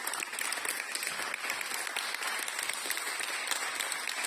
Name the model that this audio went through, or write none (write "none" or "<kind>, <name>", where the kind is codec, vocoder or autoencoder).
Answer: none